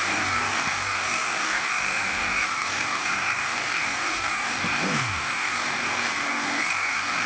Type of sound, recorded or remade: remade